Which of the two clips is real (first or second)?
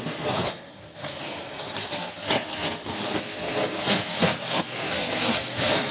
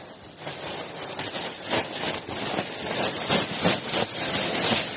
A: second